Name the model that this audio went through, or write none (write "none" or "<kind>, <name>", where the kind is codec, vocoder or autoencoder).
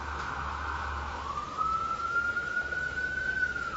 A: autoencoder, DAC-VAE